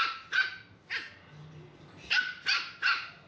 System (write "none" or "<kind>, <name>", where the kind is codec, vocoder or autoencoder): none